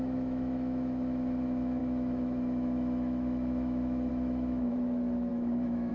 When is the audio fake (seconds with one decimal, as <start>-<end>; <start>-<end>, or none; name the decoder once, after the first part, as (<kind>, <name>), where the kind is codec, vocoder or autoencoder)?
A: 0.0-5.9 (autoencoder, DAC-VAE)